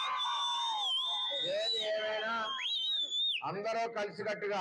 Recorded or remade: recorded